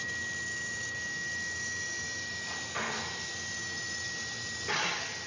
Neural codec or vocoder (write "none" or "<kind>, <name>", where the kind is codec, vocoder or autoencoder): none